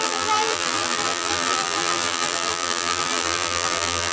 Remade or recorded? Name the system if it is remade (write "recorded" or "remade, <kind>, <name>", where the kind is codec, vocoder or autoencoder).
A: remade, vocoder, BigVGAN v2